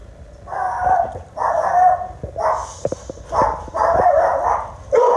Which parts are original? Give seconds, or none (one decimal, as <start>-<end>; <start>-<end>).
0.0-1.5; 2.6-3.2

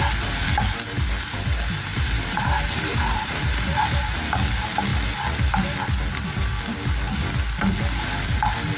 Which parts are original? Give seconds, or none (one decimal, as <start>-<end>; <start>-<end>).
0.0-1.9; 4.3-8.8

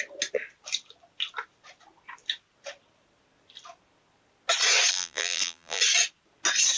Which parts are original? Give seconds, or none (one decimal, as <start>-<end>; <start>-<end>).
0.0-4.9; 5.8-6.8